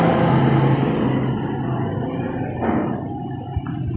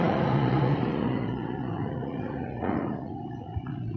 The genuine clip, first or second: first